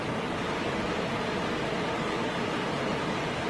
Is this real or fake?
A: real